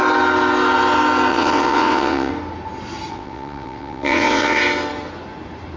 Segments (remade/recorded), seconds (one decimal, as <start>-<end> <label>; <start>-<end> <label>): 0.0-1.3 recorded; 1.3-2.3 remade; 2.3-3.1 recorded; 3.1-4.6 remade; 4.6-5.8 recorded